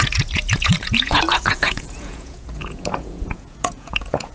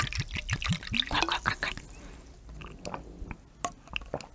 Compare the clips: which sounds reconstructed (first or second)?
first